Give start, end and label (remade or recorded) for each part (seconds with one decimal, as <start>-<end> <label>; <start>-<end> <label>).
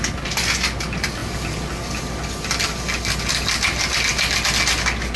0.0-5.2 recorded